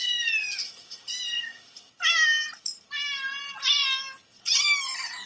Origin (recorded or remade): recorded